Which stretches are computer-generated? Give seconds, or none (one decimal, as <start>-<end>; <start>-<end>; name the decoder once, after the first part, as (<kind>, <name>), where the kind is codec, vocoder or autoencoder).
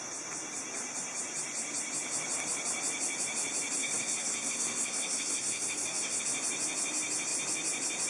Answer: 3.8-6.2 (codec, SNAC)